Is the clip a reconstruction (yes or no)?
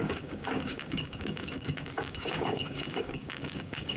yes